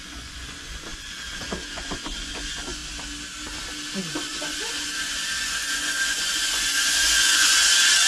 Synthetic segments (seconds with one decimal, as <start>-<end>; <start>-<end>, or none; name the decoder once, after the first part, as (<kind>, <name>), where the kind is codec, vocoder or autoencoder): 0.0-2.8 (vocoder, Vocos); 4.2-8.1